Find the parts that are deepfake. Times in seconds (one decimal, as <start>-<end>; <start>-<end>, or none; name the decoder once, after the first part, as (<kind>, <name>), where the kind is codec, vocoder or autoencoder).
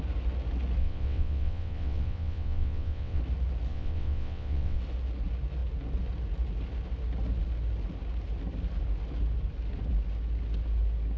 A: 0.8-3.2 (vocoder, WaveNeXt); 3.7-4.8